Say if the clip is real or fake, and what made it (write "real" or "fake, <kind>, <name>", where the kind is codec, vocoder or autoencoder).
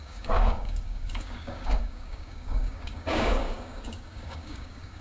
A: fake, codec, DAC